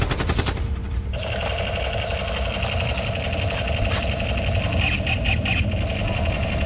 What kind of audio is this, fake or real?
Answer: real